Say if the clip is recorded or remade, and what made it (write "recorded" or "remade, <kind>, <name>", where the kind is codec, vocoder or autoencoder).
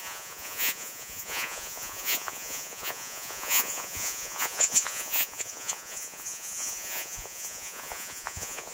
remade, vocoder, Vocos